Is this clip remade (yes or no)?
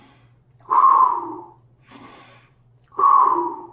no